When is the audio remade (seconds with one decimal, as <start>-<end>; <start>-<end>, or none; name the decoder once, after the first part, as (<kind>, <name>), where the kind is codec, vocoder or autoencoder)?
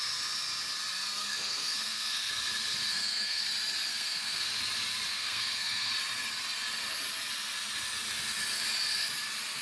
1.2-2.3 (codec, SNAC); 2.9-3.4; 3.9-4.5; 5.1-5.9